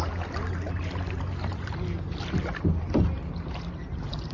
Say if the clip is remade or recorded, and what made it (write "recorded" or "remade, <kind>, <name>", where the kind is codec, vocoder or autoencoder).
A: recorded